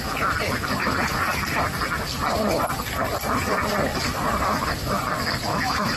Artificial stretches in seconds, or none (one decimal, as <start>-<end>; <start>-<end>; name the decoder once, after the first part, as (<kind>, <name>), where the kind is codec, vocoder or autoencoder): 5.5-6.0 (autoencoder, DAC-VAE)